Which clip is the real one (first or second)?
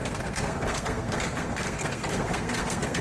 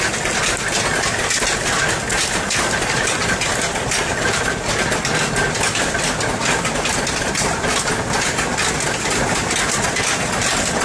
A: second